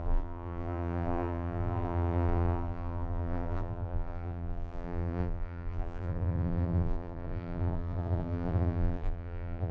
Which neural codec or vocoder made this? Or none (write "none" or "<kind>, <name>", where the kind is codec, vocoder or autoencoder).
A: vocoder, BigVGAN v2